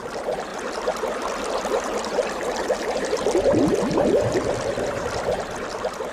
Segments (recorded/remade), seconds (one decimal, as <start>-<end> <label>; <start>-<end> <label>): 0.0-0.5 remade; 0.5-4.2 recorded; 4.2-5.4 remade; 5.4-6.1 recorded